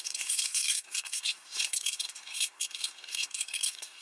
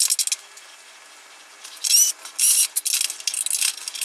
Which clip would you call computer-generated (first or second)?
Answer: first